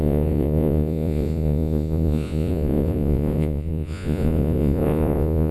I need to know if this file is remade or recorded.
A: remade